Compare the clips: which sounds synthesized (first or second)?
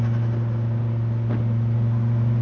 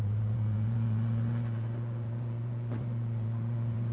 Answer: second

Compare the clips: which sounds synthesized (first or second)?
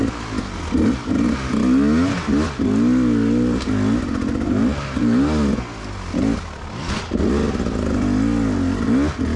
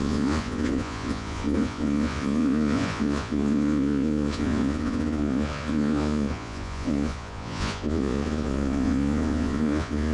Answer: second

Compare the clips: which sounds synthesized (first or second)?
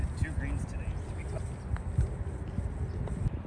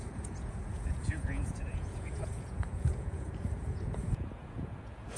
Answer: second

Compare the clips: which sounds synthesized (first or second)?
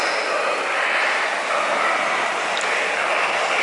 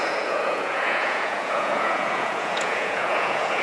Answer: second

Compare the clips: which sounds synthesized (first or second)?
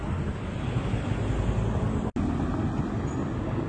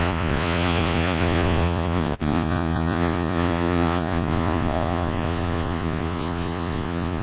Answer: second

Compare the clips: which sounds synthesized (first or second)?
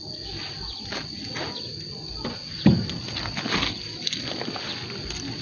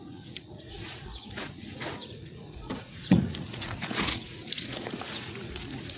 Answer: second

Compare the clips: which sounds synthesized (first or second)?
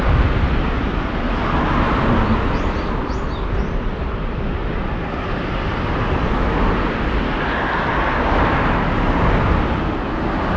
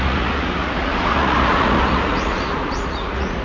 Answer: second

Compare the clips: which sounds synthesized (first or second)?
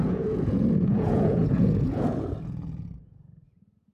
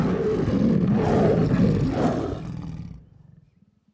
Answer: first